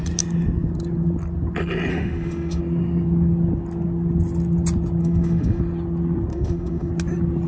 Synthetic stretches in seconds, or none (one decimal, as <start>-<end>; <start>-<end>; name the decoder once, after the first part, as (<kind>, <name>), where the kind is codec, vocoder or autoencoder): 1.9-2.6 (autoencoder, DAC-VAE); 5.0-5.6; 6.3-6.9